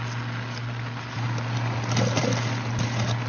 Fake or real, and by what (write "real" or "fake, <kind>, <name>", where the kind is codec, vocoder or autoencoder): real